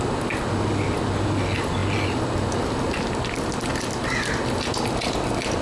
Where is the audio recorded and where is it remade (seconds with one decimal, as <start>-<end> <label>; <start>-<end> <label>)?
0.0-5.6 recorded